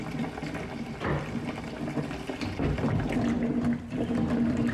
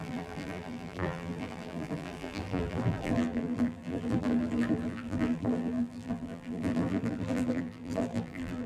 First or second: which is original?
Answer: first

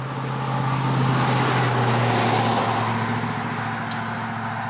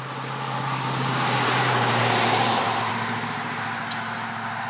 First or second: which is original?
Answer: first